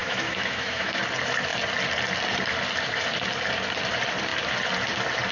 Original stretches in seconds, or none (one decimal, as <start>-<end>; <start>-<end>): 1.0-5.3